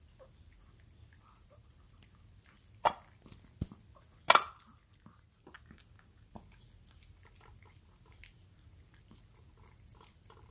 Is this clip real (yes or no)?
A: yes